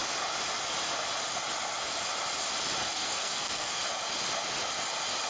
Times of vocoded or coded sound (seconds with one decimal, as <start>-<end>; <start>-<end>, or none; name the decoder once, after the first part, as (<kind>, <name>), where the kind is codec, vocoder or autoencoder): 2.8-3.8 (codec, SNAC)